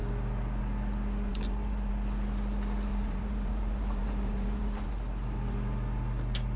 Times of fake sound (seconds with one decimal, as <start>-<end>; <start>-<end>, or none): 1.3-1.9; 2.9-4.9